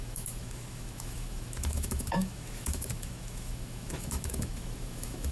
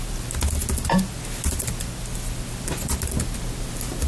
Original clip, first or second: second